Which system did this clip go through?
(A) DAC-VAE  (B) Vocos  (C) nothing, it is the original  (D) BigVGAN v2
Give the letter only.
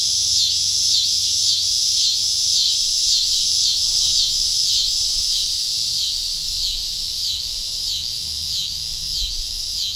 A